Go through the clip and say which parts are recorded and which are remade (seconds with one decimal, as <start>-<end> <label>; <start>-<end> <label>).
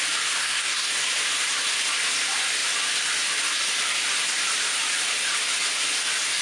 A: 0.0-0.4 recorded; 0.4-0.9 remade; 0.9-6.4 recorded